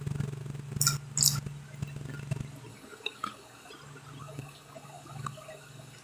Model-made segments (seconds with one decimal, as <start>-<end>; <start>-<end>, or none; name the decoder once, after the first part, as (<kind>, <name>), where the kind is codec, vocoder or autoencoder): 2.7-3.7 (codec, DAC); 4.2-6.0